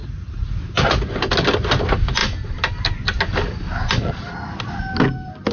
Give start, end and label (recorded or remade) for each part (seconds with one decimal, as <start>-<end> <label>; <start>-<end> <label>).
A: 0.0-0.6 remade; 0.6-5.5 recorded